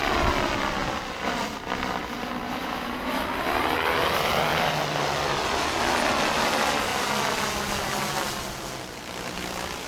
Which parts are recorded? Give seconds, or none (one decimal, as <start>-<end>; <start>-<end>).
0.0-2.6; 3.1-9.9